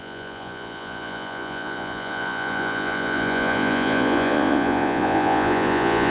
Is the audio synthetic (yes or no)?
yes